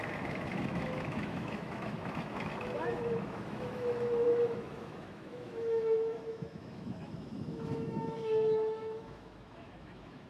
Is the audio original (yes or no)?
no